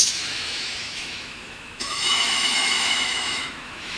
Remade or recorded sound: remade